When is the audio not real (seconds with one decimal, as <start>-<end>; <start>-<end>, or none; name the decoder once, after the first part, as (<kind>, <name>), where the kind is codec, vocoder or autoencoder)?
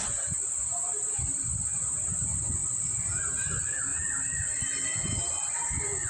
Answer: none